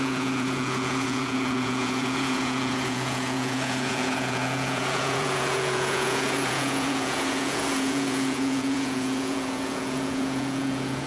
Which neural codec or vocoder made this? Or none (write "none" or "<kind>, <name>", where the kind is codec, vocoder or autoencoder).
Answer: vocoder, Vocos